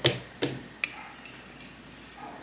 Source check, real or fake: real